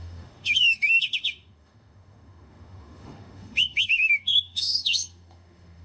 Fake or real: fake